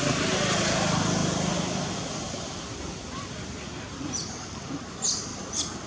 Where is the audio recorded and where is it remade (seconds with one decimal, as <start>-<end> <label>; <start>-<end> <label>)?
0.0-1.2 recorded; 1.2-4.7 remade; 4.7-5.3 recorded; 5.3-5.9 remade